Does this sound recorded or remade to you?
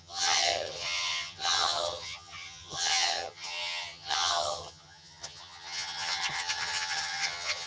remade